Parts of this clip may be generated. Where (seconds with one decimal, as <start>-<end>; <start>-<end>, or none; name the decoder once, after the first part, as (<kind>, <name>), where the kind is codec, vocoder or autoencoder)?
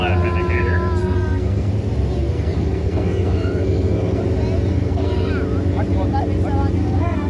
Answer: 1.0-1.7 (codec, SNAC); 2.2-4.2; 4.7-5.3; 6.8-7.3